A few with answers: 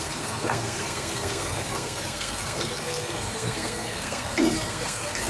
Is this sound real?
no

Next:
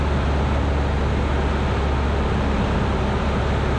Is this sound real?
yes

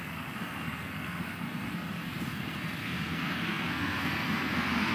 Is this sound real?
no